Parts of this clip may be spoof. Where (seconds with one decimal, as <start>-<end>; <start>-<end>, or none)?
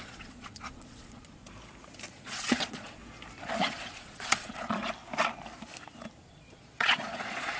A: 0.0-1.4; 2.1-3.0; 3.6-4.8; 6.3-7.6